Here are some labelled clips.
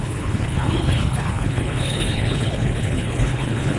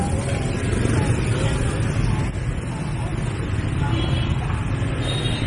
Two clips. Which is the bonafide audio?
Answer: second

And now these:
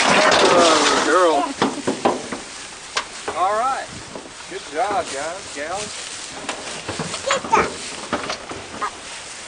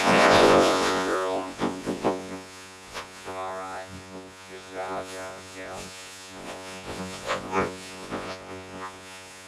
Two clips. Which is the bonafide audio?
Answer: first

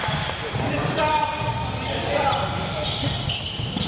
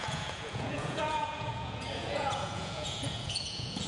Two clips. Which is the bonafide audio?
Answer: first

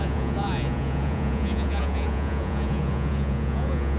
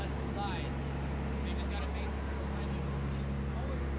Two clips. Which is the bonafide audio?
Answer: second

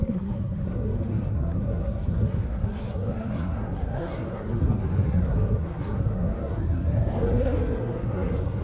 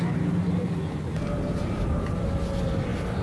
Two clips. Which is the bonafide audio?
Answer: second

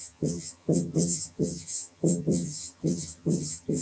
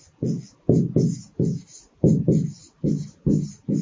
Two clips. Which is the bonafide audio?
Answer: second